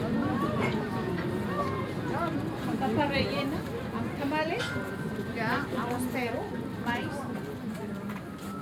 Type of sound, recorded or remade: recorded